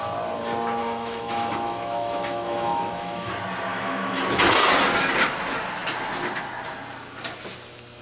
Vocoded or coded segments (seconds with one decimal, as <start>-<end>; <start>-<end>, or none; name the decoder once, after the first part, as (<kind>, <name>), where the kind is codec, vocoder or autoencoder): 0.8-3.3 (autoencoder, DAC-VAE); 3.7-4.2